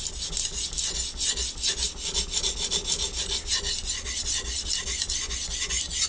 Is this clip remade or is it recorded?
recorded